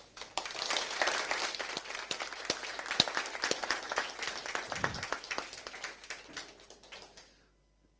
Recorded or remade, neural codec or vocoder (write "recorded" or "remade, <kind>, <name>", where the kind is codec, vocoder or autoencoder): recorded